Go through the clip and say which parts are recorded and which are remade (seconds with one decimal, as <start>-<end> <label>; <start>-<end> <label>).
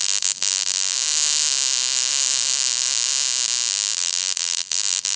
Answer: 0.0-3.1 remade; 3.1-4.0 recorded; 4.0-5.2 remade